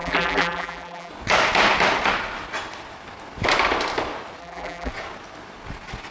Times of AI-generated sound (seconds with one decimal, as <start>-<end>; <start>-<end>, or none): 0.0-1.1; 4.4-4.9